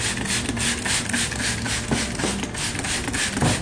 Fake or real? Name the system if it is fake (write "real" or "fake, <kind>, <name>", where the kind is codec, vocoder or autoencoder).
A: real